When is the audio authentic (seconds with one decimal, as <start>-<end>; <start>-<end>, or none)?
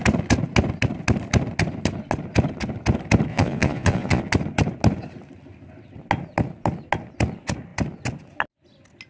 0.0-3.3; 4.2-9.1